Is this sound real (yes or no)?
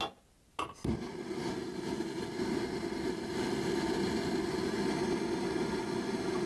yes